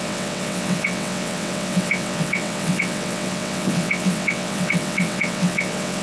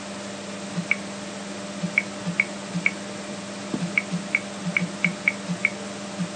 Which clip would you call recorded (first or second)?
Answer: second